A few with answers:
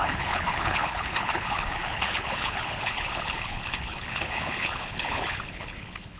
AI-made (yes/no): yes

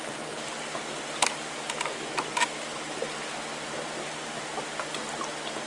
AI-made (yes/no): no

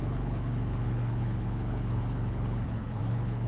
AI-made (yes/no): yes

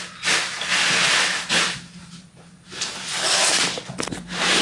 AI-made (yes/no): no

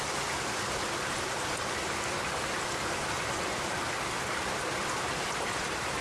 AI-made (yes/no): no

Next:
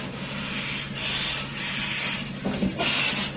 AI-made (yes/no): no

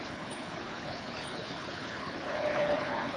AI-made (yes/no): yes